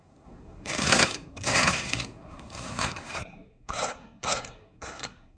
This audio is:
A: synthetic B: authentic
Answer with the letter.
A